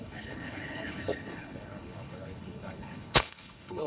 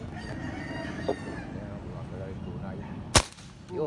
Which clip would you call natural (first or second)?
second